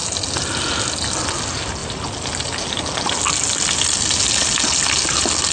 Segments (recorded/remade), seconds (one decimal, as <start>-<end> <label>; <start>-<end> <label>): 0.0-5.5 recorded